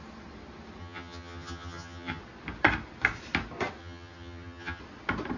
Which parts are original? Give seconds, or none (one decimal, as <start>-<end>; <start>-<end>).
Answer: 0.0-0.8; 2.2-3.8; 4.8-5.4